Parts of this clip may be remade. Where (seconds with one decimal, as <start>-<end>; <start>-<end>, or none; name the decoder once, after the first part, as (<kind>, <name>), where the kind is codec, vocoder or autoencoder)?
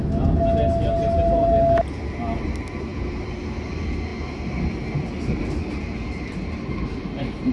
none